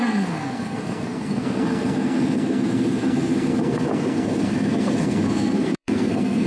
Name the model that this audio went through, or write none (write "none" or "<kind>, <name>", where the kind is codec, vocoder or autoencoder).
codec, SNAC